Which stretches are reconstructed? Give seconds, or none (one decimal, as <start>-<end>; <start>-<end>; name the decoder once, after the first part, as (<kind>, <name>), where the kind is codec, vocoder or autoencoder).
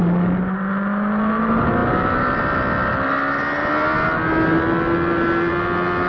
none